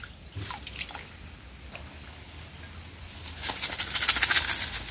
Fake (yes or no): no